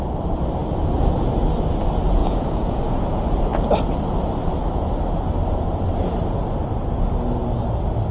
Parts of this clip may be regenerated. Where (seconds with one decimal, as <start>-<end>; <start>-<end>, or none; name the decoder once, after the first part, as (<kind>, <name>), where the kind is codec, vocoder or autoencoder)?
2.2-2.8 (vocoder, Vocos)